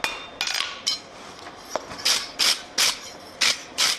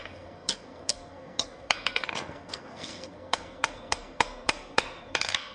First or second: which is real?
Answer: first